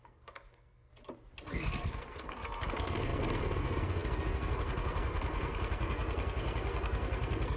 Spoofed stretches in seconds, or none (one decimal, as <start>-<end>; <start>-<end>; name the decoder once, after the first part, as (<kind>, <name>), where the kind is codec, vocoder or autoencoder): 0.0-0.9 (codec, SNAC); 1.5-7.6